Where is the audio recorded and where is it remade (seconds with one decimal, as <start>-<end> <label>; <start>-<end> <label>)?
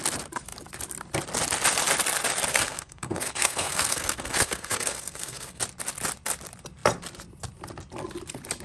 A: 0.0-2.5 recorded; 2.5-5.6 remade; 5.6-8.6 recorded